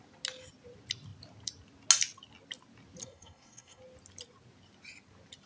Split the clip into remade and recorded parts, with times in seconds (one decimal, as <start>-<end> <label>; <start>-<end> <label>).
0.0-3.0 recorded; 3.0-3.8 remade; 3.8-5.5 recorded